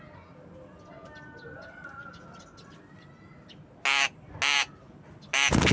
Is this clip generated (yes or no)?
no